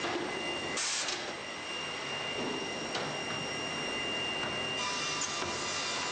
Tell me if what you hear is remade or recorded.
recorded